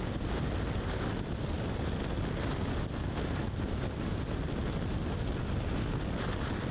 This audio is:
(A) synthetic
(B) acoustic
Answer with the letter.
B